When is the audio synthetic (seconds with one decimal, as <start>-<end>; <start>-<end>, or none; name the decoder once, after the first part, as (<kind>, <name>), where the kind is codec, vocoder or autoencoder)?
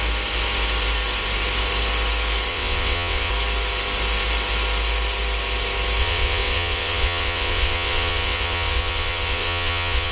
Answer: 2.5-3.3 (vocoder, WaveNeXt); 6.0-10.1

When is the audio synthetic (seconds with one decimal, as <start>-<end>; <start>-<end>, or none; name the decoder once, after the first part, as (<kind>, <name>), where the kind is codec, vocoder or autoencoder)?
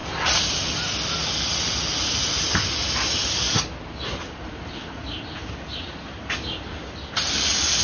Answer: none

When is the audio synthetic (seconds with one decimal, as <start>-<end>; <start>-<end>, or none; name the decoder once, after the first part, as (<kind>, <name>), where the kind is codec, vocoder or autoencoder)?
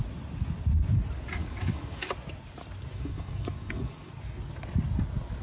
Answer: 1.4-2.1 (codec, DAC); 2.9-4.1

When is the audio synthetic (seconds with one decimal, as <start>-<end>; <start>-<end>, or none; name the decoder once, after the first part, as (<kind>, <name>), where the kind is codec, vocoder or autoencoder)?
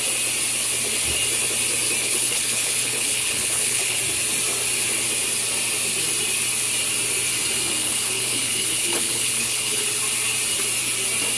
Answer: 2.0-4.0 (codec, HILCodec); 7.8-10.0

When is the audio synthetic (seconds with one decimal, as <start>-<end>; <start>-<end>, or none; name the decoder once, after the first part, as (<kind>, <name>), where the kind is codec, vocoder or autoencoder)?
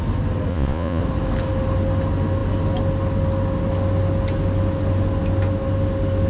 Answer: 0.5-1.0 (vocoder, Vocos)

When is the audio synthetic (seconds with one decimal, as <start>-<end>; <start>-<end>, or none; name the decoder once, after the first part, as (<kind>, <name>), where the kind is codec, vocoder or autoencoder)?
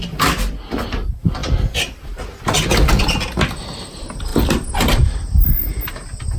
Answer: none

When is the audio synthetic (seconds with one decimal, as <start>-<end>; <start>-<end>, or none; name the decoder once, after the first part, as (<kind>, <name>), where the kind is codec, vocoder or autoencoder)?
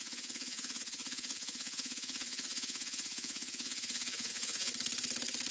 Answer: 0.0-4.7 (vocoder, Vocos)